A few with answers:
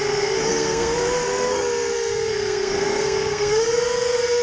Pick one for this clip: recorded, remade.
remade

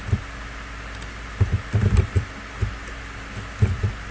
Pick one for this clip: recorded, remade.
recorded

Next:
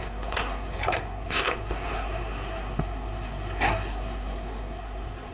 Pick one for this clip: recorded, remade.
remade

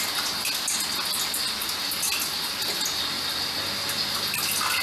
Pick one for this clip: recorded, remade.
recorded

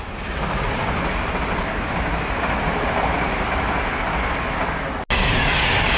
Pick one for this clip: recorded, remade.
recorded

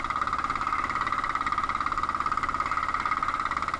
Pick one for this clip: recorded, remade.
recorded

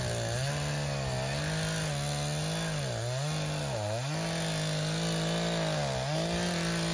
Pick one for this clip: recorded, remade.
recorded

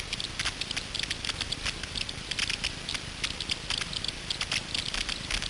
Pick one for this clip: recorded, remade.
recorded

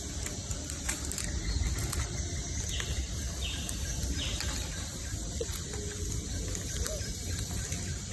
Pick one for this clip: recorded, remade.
recorded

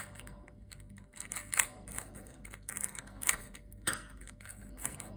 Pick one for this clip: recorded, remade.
remade